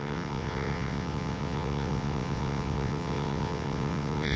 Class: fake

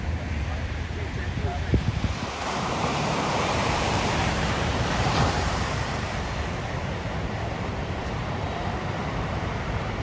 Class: fake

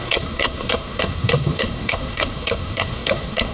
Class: fake